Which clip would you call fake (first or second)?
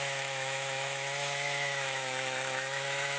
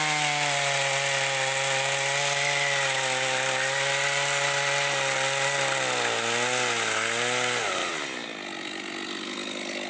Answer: first